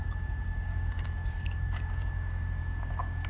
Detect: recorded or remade remade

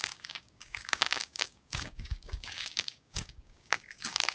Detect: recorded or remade remade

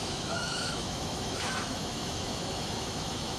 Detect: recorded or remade remade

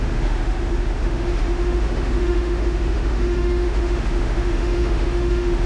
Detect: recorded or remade remade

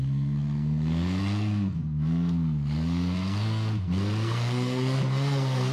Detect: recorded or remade remade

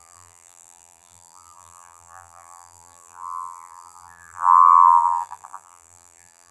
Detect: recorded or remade remade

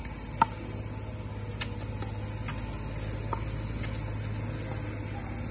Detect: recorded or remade recorded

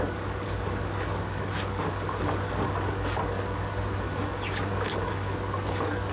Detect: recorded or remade remade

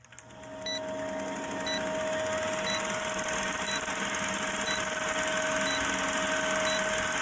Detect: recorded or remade recorded